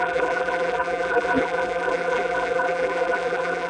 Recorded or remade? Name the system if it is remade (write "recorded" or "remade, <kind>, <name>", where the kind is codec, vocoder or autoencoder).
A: remade, vocoder, BigVGAN v2